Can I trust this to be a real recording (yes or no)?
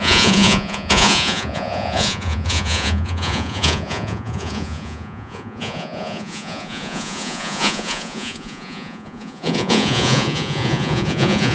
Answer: no